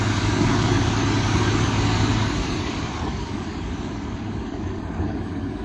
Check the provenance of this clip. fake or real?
fake